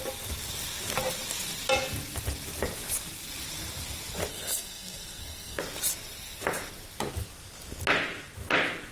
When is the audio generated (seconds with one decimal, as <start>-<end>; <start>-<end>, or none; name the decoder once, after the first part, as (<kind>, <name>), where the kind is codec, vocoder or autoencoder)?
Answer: 4.3-5.6 (codec, SNAC)